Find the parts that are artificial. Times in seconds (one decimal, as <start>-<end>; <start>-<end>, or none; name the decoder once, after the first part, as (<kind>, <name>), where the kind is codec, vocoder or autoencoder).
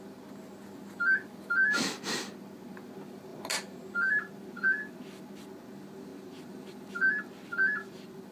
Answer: none